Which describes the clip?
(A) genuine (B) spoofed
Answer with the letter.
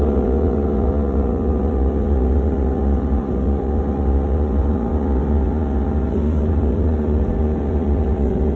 B